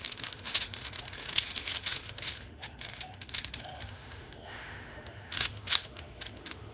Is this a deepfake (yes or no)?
yes